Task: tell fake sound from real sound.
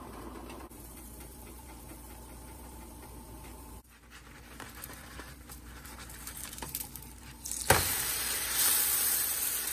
fake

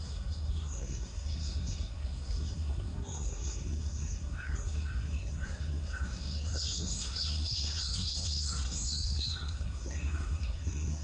fake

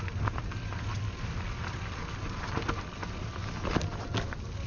real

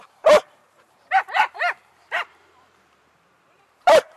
fake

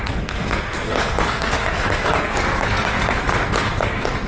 fake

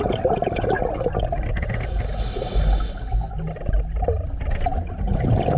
real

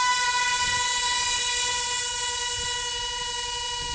fake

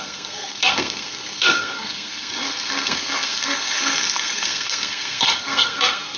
fake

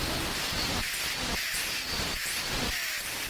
real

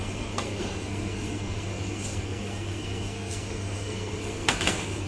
fake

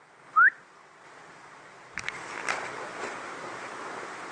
real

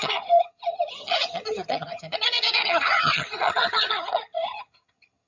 fake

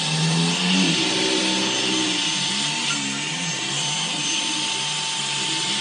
real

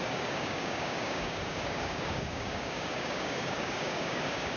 fake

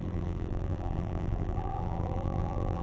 fake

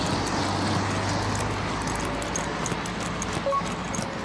real